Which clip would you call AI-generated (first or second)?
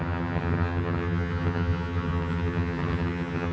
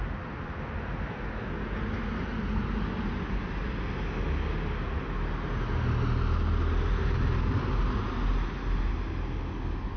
first